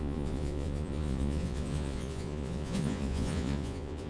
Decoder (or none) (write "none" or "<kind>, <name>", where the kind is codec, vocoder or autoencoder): vocoder, Vocos